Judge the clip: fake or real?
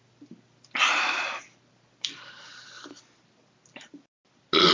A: real